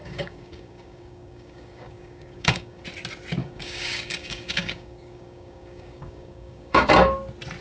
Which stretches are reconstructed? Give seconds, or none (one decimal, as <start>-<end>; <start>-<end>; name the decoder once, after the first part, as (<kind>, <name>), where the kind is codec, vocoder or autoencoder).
0.0-2.8 (codec, DAC); 3.4-6.9